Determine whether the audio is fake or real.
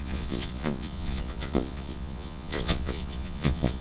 fake